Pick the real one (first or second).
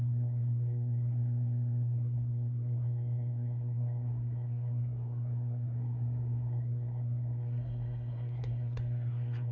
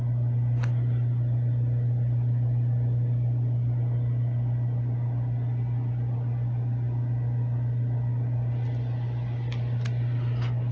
second